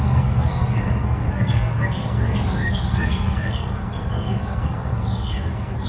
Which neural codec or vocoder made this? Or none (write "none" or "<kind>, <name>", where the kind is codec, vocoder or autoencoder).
codec, SNAC